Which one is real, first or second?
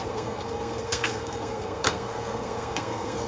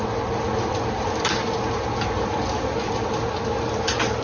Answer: second